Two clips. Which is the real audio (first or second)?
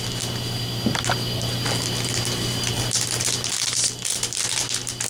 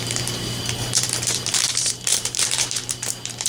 first